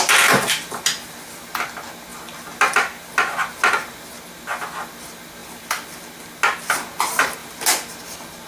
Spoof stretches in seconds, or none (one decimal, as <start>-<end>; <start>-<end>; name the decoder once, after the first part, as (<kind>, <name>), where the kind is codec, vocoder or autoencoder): none